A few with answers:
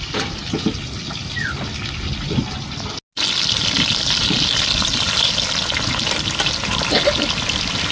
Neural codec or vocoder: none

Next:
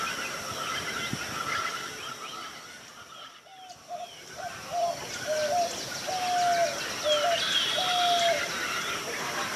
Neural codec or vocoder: none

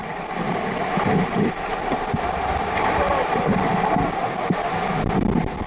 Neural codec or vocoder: none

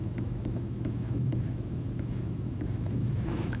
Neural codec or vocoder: autoencoder, DAC-VAE